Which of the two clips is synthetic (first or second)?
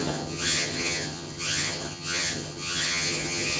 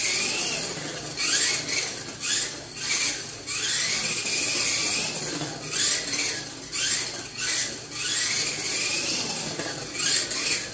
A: first